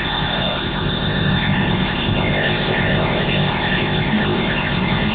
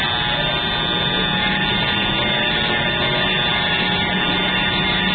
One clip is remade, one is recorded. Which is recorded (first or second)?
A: second